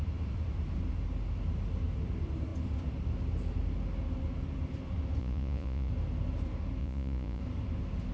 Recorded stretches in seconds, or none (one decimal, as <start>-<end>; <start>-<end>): 0.0-5.2; 5.9-6.8; 7.4-8.1